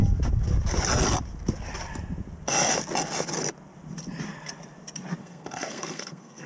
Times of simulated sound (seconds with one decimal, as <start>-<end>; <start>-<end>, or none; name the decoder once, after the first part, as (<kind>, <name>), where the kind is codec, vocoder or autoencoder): 5.2-6.5 (codec, SNAC)